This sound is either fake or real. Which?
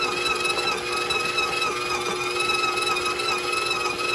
real